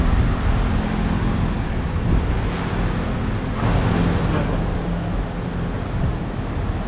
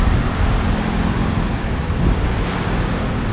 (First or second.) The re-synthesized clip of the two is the second